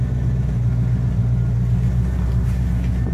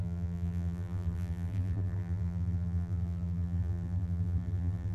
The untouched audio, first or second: first